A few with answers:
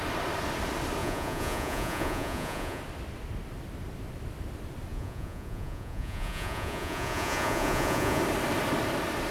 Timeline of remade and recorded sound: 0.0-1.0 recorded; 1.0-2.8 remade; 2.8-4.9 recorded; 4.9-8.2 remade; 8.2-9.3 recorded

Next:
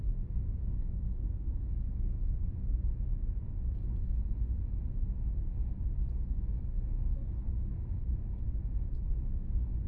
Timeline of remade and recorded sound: 0.0-0.6 recorded; 0.6-1.7 remade; 1.7-9.9 recorded